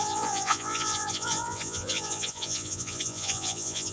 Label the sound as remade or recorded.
remade